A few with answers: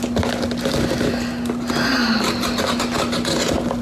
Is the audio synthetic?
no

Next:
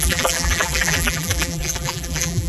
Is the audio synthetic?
yes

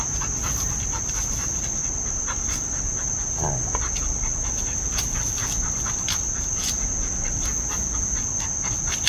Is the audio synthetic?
no